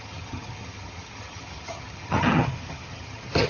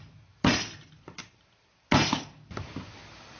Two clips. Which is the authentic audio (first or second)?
second